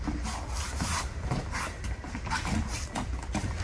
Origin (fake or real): real